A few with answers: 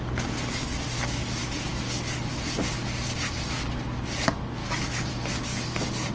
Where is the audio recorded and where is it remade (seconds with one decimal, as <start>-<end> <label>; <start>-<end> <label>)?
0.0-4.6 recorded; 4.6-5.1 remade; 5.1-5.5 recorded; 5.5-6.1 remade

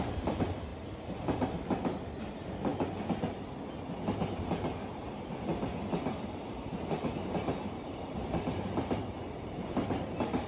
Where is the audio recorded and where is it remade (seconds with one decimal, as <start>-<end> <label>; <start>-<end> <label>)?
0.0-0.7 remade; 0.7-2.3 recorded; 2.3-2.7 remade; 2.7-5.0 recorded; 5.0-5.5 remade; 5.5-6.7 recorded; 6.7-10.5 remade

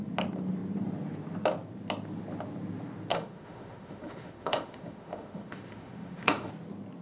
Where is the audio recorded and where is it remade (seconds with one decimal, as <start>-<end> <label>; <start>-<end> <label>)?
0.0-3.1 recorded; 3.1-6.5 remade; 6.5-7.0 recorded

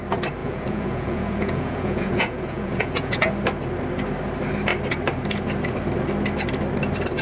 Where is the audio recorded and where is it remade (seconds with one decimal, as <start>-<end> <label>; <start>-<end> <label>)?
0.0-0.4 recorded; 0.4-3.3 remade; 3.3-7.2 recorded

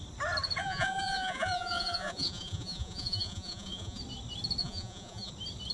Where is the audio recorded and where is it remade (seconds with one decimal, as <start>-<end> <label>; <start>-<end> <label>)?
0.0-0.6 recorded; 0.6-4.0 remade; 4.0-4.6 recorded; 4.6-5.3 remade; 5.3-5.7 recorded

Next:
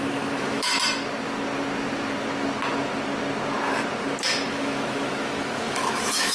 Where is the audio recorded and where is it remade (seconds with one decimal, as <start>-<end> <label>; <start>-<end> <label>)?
0.0-0.7 remade; 0.7-4.5 recorded; 4.5-6.3 remade

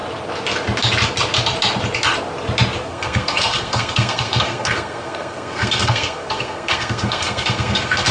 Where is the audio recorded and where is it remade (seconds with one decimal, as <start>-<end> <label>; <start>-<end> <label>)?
0.0-2.9 recorded; 2.9-8.1 remade